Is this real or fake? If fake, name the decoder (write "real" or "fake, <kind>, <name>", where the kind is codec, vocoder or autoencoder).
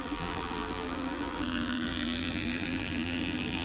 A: fake, vocoder, BigVGAN v2